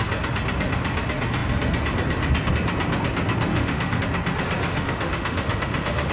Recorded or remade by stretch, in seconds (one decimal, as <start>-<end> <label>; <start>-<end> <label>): 0.0-3.5 recorded; 3.5-4.0 remade; 4.0-4.7 recorded; 4.7-6.1 remade